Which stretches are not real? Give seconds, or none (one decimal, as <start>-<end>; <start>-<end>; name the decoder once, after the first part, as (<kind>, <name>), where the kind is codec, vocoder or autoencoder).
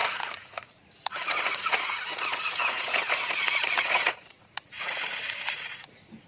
0.0-6.3 (vocoder, Vocos)